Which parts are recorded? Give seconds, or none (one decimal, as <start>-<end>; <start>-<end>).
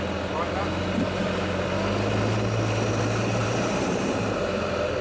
0.0-3.4; 4.1-5.0